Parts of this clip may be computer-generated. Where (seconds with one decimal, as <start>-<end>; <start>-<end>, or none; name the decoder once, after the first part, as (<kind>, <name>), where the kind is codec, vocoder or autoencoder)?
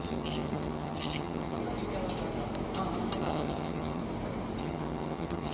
0.0-1.6 (vocoder, HiFi-GAN); 3.2-4.0; 4.6-5.5